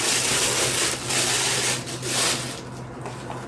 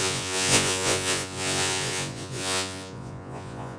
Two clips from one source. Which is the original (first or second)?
first